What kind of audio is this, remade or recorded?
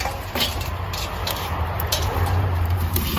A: remade